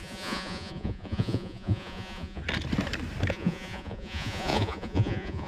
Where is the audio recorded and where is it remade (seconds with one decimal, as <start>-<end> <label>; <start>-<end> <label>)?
0.0-2.4 remade; 2.4-3.3 recorded; 3.3-5.5 remade